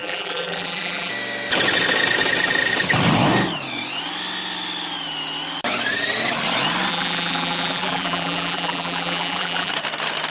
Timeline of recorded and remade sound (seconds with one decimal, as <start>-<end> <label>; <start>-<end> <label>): 0.0-1.1 remade; 1.1-6.9 recorded; 6.9-9.7 remade; 9.7-10.3 recorded